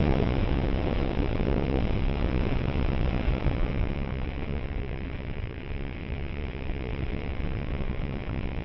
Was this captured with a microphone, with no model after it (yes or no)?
no